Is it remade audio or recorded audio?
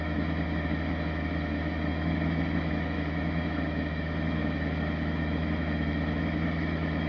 remade